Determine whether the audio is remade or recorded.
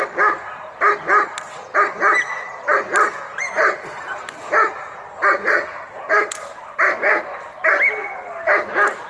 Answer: recorded